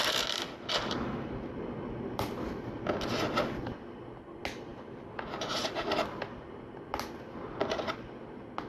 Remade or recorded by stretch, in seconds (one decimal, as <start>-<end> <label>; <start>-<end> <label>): 0.0-8.7 recorded